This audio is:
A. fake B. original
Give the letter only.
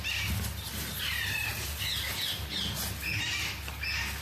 B